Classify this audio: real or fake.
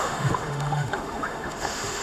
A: fake